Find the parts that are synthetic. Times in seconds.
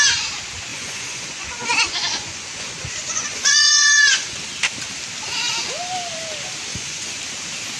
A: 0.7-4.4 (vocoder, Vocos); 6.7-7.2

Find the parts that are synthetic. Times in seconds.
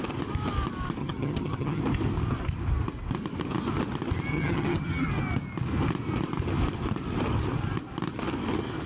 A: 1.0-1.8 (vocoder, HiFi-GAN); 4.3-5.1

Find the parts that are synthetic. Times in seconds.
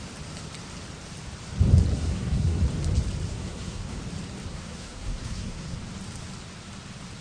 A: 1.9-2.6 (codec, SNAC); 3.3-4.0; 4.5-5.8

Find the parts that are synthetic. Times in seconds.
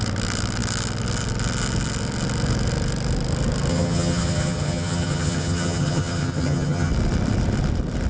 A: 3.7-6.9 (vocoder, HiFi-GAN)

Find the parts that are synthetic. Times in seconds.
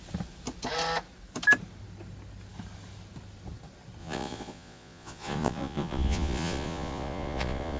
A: 4.0-7.8 (vocoder, Vocos)